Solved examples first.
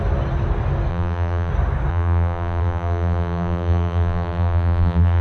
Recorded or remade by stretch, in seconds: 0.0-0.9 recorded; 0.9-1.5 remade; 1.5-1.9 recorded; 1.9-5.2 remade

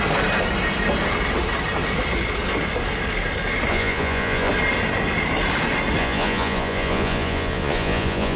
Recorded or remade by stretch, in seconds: 0.0-3.7 recorded; 3.7-4.5 remade; 4.5-6.0 recorded; 6.0-8.4 remade

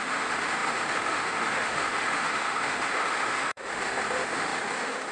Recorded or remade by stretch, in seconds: 0.0-5.1 remade

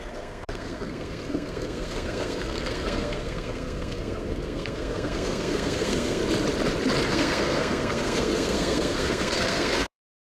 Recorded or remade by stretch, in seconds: 0.0-6.2 remade; 6.2-7.1 recorded; 7.1-10.3 remade

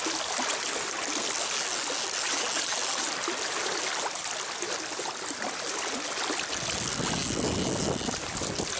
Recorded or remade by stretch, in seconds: 0.0-8.8 recorded

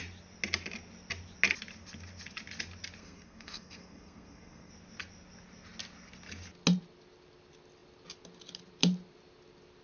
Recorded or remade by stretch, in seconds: 0.0-3.0 recorded; 3.0-4.7 remade; 4.7-9.8 recorded

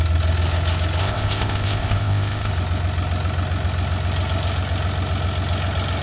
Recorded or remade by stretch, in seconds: 0.0-1.0 recorded; 1.0-2.5 remade; 2.5-6.0 recorded

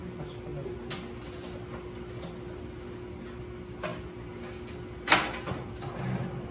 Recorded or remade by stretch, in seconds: 0.0-6.5 recorded